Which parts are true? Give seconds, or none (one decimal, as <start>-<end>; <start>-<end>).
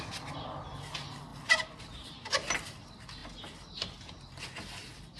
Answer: 0.0-5.2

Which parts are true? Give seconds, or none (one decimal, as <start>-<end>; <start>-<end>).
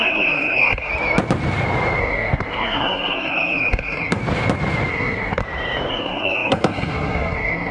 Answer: 0.9-2.0; 4.2-4.9; 5.4-5.9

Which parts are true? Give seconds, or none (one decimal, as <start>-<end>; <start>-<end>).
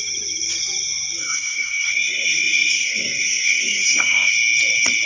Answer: 0.0-1.2; 4.3-5.1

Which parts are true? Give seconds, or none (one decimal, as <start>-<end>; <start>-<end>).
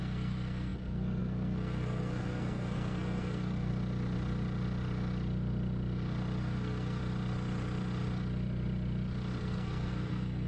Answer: 3.7-6.4; 7.0-9.4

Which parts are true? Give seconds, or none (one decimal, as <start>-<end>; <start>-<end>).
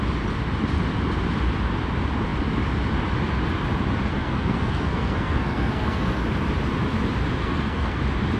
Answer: 0.0-4.1; 6.2-7.4; 8.0-8.4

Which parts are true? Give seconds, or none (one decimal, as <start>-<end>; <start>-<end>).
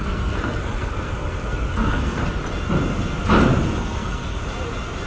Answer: 2.4-3.8; 4.4-5.1